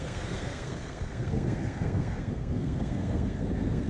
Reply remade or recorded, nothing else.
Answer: remade